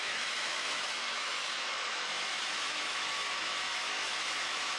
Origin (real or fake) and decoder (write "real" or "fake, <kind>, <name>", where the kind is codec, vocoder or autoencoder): fake, autoencoder, DAC-VAE